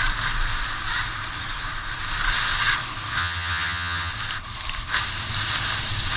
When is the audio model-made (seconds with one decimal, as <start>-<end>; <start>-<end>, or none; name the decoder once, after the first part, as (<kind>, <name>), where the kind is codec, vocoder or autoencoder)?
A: 3.2-4.1 (vocoder, HiFi-GAN)